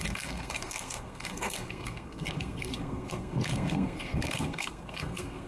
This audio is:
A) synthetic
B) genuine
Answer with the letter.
A